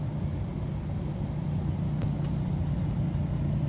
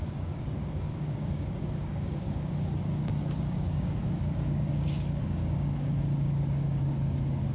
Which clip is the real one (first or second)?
first